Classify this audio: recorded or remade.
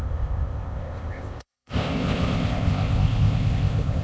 remade